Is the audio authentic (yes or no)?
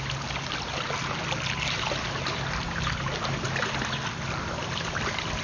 yes